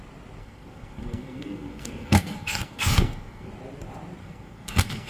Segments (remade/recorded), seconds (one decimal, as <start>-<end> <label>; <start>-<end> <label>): 0.0-0.4 recorded; 0.4-3.5 remade; 3.5-4.2 recorded; 4.2-5.1 remade